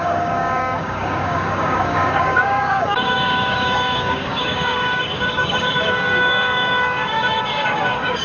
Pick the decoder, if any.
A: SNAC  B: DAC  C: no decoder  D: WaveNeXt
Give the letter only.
B